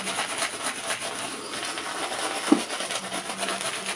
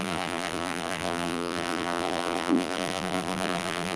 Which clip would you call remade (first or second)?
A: second